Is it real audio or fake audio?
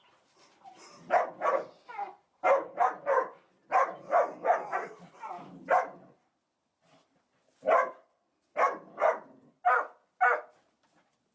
real